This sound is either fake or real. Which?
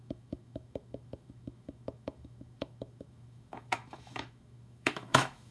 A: fake